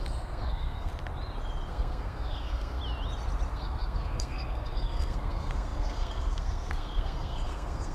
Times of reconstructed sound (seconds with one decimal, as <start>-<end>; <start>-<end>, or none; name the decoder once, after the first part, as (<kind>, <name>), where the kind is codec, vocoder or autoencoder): 0.0-0.9 (codec, SNAC); 1.7-2.8; 3.5-7.9